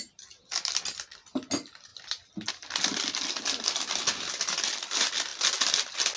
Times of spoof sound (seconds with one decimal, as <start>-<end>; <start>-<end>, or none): none